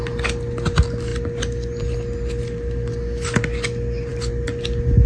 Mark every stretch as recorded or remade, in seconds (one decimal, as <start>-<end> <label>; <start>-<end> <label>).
0.0-5.1 recorded